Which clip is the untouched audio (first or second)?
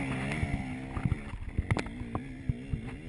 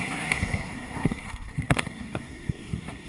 first